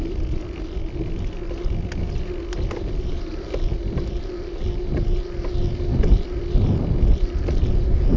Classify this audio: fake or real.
real